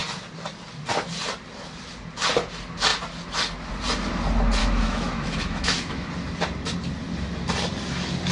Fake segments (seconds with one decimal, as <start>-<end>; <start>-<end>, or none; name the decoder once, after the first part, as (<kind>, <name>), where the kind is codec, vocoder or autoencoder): 4.6-6.1 (autoencoder, DAC-VAE)